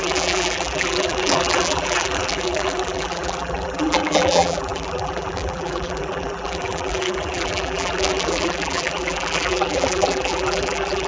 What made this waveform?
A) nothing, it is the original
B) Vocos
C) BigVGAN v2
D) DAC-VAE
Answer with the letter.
C